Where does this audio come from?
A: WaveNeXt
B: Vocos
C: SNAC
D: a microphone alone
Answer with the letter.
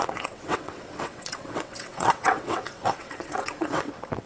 A